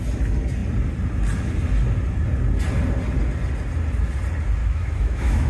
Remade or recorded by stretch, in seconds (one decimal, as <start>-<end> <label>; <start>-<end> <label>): 0.0-4.6 recorded; 4.6-5.5 remade